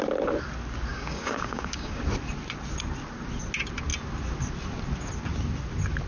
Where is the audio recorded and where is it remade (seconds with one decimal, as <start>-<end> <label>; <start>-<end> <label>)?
0.0-0.9 recorded; 0.9-2.0 remade; 2.0-6.1 recorded